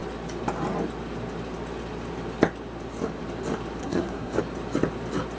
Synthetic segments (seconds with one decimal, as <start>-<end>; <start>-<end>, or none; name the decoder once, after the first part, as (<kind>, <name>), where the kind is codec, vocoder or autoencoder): 3.8-4.4 (codec, SNAC)